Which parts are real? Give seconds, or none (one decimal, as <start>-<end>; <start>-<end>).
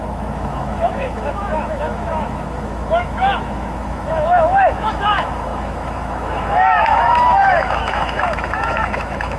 none